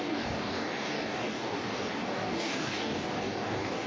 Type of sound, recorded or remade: remade